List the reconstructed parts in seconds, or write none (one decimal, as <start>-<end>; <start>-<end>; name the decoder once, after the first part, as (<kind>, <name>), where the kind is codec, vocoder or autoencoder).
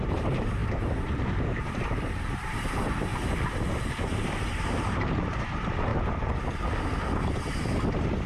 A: 0.0-3.1 (vocoder, BigVGAN v2); 4.2-5.9; 7.9-8.3